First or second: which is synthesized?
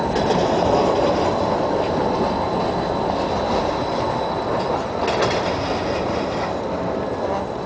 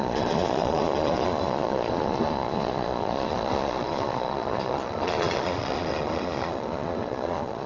second